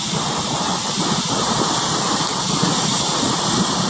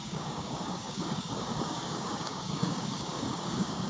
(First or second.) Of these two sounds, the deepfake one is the second